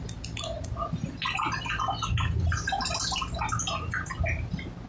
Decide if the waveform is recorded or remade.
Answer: recorded